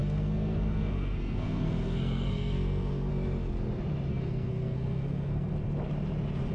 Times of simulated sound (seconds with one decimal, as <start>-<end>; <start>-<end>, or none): 0.0-3.1; 4.1-5.5